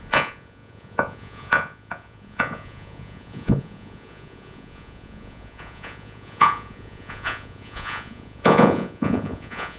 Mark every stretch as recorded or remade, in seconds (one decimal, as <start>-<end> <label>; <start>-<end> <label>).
0.0-9.8 remade